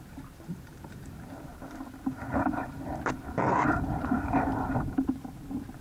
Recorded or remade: remade